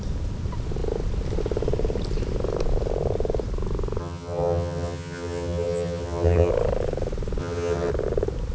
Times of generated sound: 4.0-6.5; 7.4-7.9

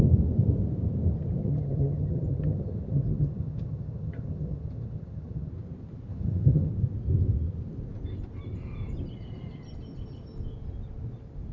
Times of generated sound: 1.4-5.5; 6.1-6.7

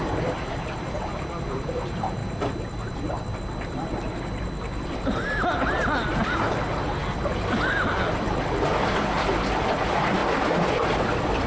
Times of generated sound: none

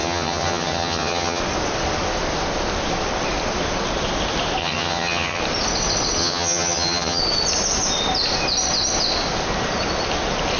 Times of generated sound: 0.0-1.4; 4.6-5.4; 6.2-7.2

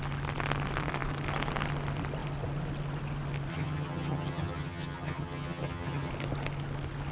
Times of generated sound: 3.5-6.1

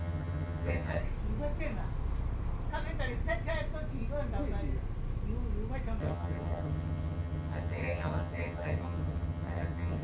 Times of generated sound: 0.0-1.0; 6.0-10.0

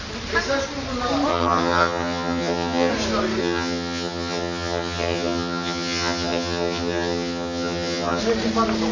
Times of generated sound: 1.3-2.9; 3.4-8.2

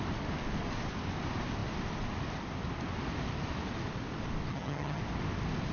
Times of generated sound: 4.5-5.0